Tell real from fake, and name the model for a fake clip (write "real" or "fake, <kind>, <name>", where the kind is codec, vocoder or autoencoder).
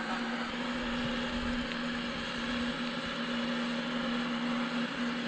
real